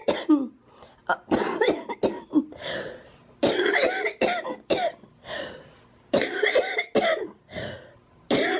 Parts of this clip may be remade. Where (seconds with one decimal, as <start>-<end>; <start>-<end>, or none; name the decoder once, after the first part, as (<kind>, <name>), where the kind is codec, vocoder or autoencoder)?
none